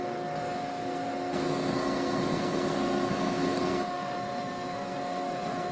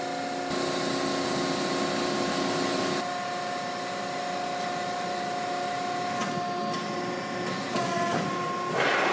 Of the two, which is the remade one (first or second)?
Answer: first